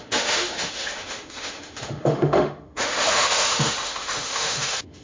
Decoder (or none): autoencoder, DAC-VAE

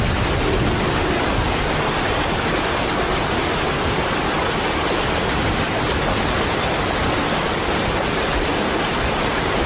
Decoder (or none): none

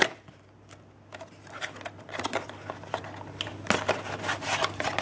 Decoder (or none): none